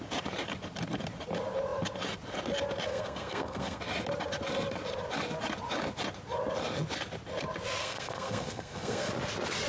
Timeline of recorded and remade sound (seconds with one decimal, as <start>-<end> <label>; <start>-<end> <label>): 0.0-2.9 recorded; 2.9-3.8 remade; 3.8-7.8 recorded; 7.8-9.1 remade; 9.1-9.7 recorded